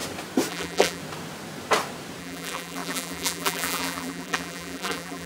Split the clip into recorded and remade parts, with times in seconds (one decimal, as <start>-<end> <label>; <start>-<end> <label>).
0.0-0.5 recorded; 0.5-1.0 remade; 1.0-2.2 recorded; 2.2-5.3 remade